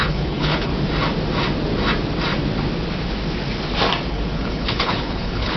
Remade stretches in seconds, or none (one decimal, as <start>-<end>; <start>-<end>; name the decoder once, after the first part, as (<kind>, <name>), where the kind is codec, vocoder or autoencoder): 0.0-0.7 (codec, HILCodec); 4.1-5.6